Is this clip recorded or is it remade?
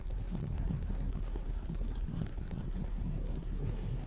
remade